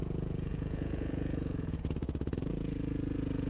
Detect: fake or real fake